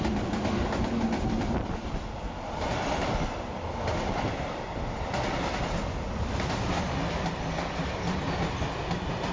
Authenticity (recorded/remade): recorded